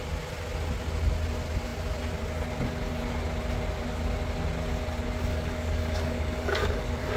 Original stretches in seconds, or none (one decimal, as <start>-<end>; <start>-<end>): 0.0-5.3